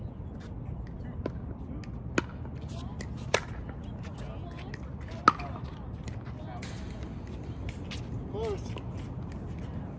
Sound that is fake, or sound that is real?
real